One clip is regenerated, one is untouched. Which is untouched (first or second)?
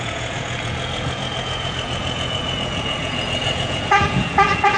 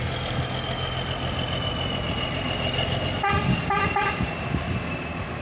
second